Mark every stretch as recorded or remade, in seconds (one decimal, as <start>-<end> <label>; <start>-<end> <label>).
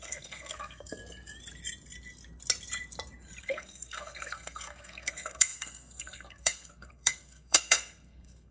0.0-1.0 remade; 1.0-3.4 recorded; 3.4-8.5 remade